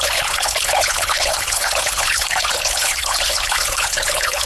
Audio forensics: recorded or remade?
remade